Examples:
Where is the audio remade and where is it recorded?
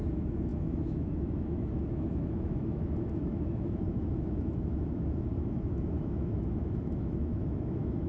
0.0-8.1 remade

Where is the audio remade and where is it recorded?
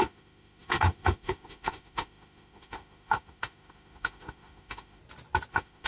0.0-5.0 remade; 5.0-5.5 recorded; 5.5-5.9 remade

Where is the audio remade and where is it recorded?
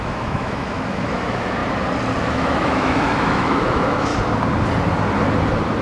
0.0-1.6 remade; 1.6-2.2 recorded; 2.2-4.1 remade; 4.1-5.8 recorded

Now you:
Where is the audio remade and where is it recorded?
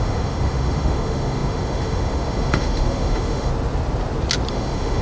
0.0-3.5 remade; 3.5-4.5 recorded; 4.5-5.0 remade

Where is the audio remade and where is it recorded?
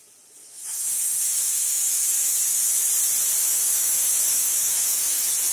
0.0-0.4 recorded; 0.4-2.9 remade; 2.9-3.4 recorded; 3.4-5.5 remade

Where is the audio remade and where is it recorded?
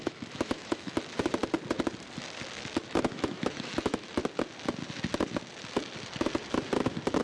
0.0-1.4 remade; 1.4-2.8 recorded; 2.8-4.2 remade; 4.2-7.2 recorded